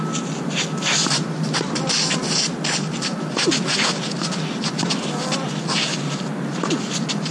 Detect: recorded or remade recorded